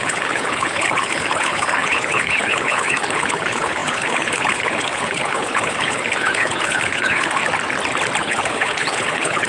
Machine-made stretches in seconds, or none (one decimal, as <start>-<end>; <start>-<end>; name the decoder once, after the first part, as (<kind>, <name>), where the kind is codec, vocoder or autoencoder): 0.0-7.4 (codec, HILCodec); 8.2-9.5